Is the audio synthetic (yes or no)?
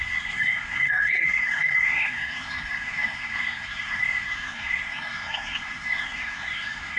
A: yes